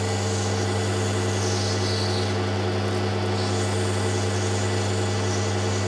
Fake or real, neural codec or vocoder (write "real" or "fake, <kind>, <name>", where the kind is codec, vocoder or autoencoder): real